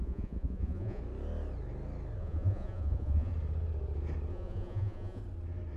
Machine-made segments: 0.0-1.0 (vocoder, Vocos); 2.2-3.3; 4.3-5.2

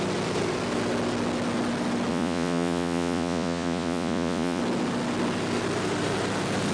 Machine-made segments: 2.1-4.6 (vocoder, Vocos)

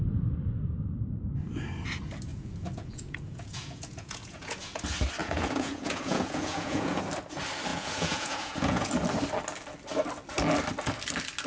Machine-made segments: 2.3-4.8 (vocoder, Vocos); 5.2-7.0; 7.7-8.9

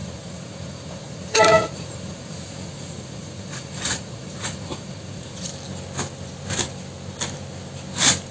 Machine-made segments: 0.0-5.5 (vocoder, Vocos)

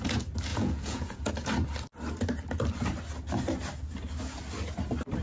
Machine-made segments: 0.5-1.3 (vocoder, Vocos)